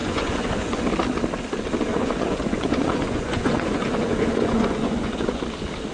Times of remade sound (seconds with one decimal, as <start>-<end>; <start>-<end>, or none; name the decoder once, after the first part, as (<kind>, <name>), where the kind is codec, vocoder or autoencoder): 0.0-0.8 (vocoder, Vocos); 1.9-5.4